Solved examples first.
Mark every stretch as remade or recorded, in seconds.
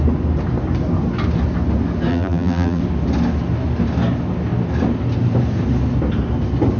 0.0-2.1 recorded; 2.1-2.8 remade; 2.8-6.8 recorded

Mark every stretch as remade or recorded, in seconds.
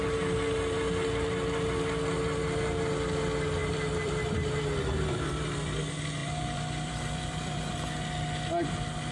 0.0-3.6 recorded; 3.6-5.8 remade; 5.8-6.2 recorded; 6.2-7.6 remade; 7.6-9.1 recorded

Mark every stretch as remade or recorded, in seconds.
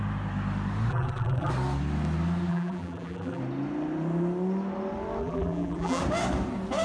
0.0-0.9 recorded; 0.9-1.5 remade; 1.5-2.5 recorded; 2.5-3.4 remade; 3.4-5.2 recorded; 5.2-6.0 remade; 6.0-6.8 recorded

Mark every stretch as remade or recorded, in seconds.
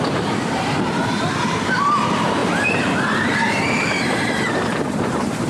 0.0-5.5 remade